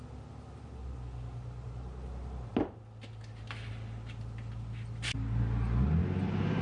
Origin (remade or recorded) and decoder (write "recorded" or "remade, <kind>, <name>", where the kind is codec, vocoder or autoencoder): recorded